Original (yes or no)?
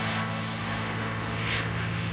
no